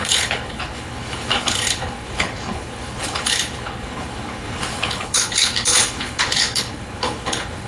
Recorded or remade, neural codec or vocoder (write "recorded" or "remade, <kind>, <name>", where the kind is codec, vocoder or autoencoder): remade, codec, HILCodec